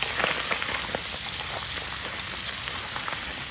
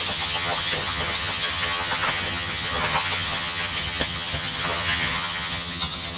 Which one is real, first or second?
first